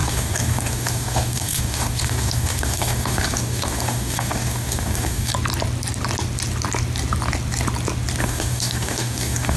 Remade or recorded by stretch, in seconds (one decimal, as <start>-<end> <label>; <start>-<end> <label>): 0.0-5.3 remade; 5.3-8.2 recorded; 8.2-9.6 remade